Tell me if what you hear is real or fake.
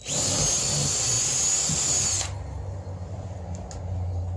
real